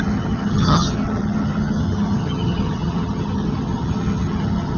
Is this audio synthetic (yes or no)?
yes